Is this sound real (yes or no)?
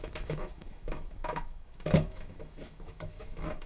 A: no